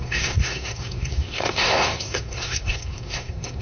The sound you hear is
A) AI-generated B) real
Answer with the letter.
A